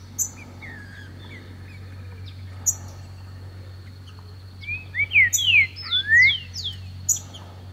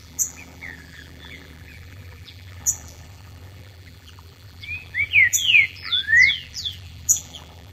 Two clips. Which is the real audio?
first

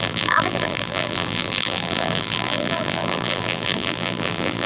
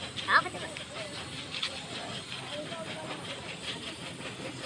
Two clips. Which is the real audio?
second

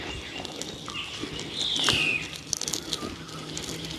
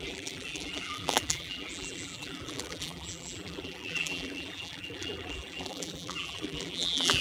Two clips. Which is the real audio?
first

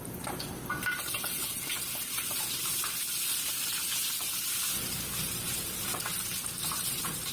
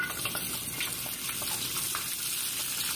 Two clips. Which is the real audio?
second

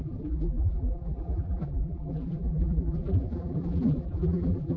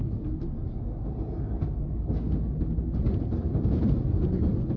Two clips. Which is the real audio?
second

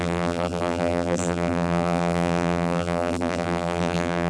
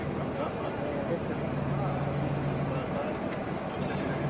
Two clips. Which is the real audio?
second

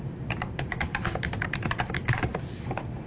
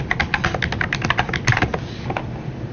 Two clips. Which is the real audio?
second